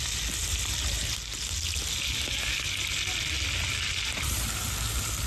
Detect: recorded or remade recorded